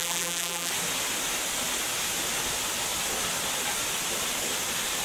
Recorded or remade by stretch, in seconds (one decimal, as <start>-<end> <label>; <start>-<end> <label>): 0.0-0.7 remade; 0.7-5.0 recorded